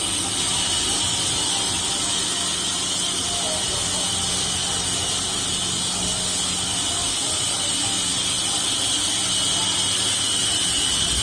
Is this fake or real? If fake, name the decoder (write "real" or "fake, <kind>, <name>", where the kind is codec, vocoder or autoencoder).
real